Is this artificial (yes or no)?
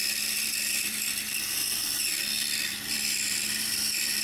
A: yes